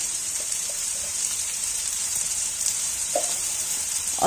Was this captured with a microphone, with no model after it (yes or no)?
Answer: no